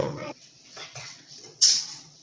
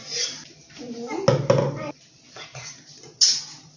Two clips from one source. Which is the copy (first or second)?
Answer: first